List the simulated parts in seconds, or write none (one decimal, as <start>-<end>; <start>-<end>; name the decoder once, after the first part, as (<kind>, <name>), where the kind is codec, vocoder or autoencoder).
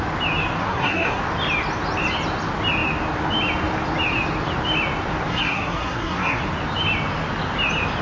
0.6-1.2 (codec, SNAC); 5.3-6.4